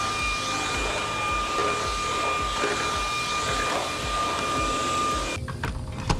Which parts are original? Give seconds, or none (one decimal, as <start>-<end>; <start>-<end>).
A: 0.0-6.2